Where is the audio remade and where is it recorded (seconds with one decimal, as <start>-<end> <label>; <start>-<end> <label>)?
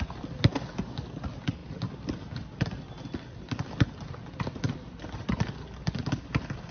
0.0-6.7 recorded